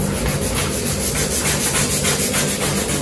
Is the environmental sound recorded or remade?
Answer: recorded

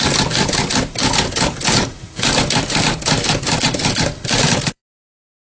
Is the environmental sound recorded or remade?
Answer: recorded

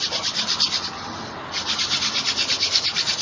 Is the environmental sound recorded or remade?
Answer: recorded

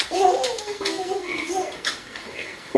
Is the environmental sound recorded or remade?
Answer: remade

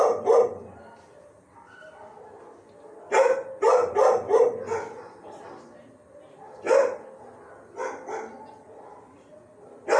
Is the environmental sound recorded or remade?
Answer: recorded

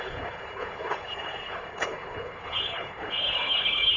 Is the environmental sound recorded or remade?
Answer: remade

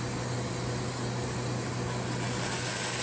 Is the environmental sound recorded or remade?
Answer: recorded